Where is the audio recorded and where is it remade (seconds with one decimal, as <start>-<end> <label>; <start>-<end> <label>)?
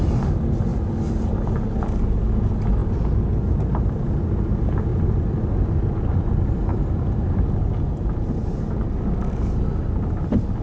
0.0-10.6 recorded